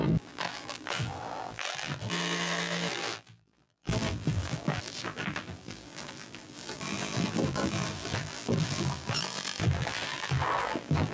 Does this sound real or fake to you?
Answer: fake